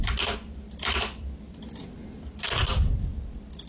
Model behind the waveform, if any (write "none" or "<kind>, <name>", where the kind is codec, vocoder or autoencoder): vocoder, BigVGAN v2